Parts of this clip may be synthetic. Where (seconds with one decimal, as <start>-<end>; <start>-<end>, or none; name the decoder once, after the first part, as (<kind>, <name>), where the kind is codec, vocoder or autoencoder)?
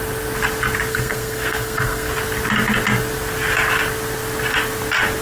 0.9-2.1 (codec, SNAC)